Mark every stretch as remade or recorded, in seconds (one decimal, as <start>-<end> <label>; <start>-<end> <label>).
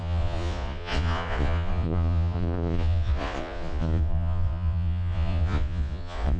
0.0-6.4 remade